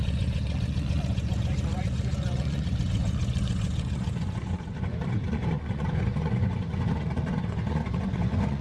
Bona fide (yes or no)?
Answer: no